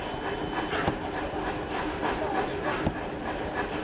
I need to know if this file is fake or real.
real